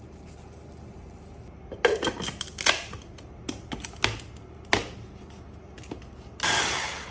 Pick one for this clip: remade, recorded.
recorded